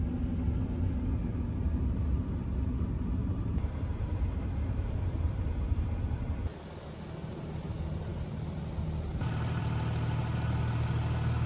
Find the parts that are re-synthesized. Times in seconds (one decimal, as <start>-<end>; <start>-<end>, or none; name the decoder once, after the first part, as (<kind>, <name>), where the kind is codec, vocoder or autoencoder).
3.2-6.3 (vocoder, BigVGAN v2); 8.1-8.6; 9.1-9.6